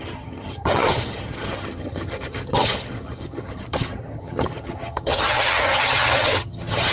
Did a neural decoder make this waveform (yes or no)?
yes